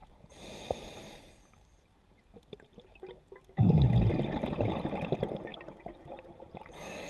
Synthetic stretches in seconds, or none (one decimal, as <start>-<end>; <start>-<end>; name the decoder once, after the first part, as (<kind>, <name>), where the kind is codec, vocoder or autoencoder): 0.0-1.7 (vocoder, BigVGAN v2); 4.9-7.1

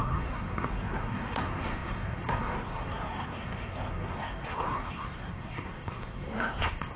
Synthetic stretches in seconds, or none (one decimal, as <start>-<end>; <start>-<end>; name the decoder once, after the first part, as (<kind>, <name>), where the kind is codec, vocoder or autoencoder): 0.0-7.0 (codec, SNAC)

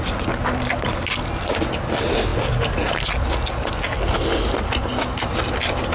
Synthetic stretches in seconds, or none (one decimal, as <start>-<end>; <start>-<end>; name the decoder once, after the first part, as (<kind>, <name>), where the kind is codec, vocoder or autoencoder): none